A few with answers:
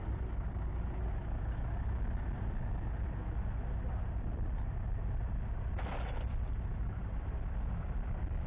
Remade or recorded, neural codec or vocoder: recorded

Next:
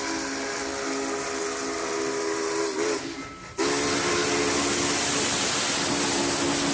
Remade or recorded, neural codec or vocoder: recorded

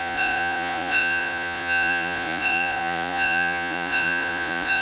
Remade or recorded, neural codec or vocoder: remade, vocoder, Vocos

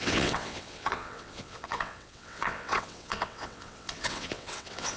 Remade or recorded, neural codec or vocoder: remade, vocoder, WaveNeXt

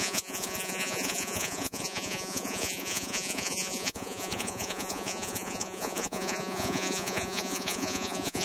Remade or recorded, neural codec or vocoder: remade, vocoder, Vocos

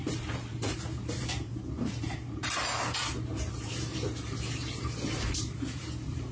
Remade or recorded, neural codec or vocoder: remade, vocoder, BigVGAN v2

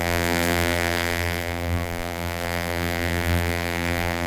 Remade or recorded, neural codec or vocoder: remade, vocoder, BigVGAN v2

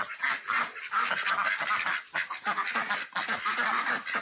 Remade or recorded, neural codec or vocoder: recorded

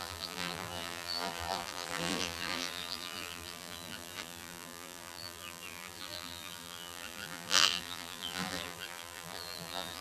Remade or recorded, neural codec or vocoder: remade, vocoder, BigVGAN v2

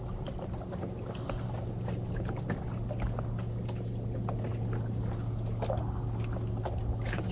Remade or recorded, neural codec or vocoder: recorded